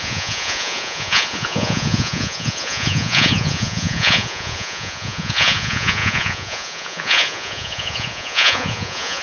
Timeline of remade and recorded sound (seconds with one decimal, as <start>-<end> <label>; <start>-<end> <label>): 0.0-9.2 remade